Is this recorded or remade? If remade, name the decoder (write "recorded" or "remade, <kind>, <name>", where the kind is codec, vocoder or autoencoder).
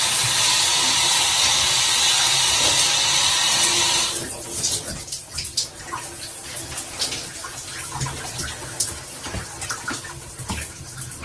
recorded